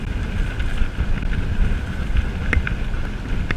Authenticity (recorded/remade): recorded